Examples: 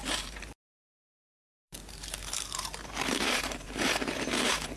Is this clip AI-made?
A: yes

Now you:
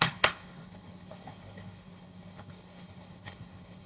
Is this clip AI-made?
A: yes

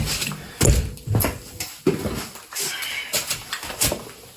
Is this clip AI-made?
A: no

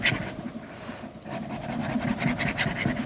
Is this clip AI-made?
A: no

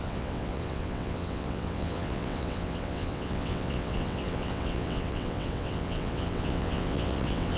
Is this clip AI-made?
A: yes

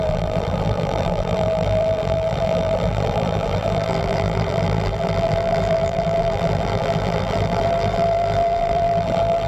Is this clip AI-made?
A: yes